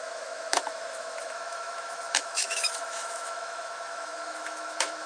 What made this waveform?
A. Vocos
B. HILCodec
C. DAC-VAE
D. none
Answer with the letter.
C